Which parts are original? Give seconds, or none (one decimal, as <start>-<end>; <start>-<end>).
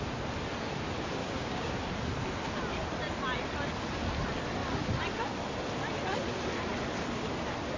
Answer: 0.0-1.2; 1.7-7.8